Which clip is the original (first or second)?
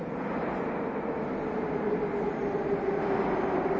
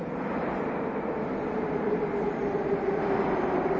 first